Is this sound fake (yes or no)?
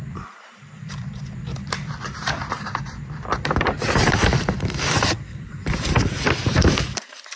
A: yes